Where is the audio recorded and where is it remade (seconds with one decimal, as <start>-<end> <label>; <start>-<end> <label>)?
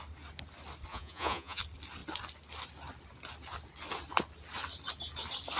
0.0-0.9 recorded; 0.9-1.6 remade; 1.6-5.6 recorded